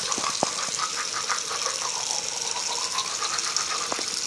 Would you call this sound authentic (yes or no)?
yes